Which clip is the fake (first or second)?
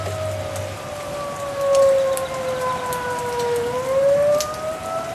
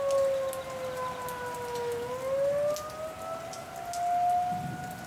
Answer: first